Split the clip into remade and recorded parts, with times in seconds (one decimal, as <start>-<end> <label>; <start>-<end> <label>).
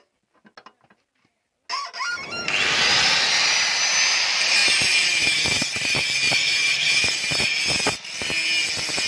0.0-4.6 recorded; 4.6-7.5 remade; 7.5-9.1 recorded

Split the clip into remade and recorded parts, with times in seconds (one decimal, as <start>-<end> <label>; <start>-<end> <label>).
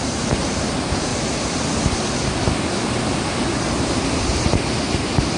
0.0-1.1 remade; 1.1-3.8 recorded; 3.8-5.4 remade